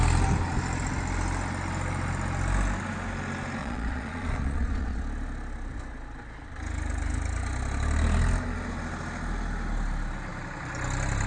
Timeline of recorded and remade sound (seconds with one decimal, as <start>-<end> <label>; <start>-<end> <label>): 0.0-3.6 recorded; 3.6-5.0 remade; 5.0-11.3 recorded